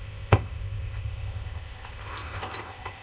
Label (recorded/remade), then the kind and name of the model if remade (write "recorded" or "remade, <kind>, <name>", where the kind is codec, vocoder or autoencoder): remade, codec, ZipCodec